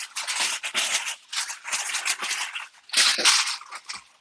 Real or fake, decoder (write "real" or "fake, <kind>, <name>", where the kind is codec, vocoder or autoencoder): real